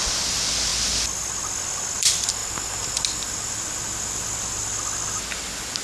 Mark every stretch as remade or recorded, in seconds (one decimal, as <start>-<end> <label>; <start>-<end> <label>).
0.0-5.8 recorded